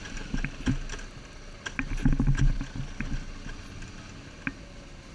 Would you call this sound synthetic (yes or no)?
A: no